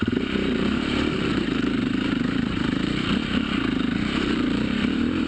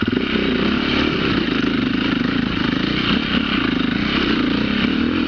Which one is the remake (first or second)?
first